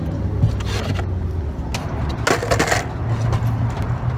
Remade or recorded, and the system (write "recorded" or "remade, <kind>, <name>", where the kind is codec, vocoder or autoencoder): recorded